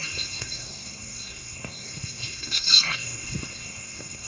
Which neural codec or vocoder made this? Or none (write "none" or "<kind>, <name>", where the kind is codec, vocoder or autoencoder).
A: codec, SNAC